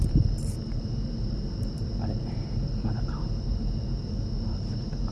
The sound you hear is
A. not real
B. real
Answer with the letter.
A